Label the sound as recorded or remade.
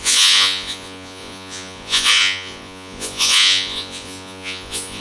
remade